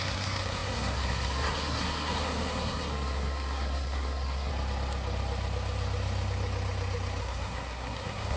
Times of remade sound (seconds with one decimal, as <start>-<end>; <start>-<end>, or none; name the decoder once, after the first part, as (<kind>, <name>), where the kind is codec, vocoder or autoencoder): 0.0-4.5 (codec, SNAC); 7.2-8.4